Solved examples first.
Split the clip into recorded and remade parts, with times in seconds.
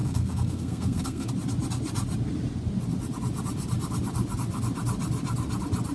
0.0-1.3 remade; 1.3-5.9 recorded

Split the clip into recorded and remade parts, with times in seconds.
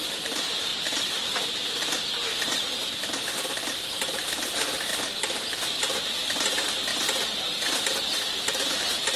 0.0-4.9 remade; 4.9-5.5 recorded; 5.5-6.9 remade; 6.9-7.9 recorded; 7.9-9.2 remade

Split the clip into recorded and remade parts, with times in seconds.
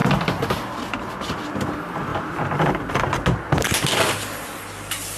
0.0-2.1 recorded; 2.1-2.9 remade; 2.9-5.2 recorded